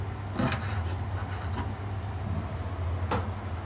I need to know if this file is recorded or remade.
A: recorded